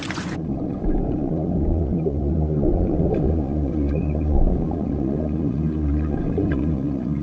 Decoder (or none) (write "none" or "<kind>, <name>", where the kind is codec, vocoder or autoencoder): vocoder, Vocos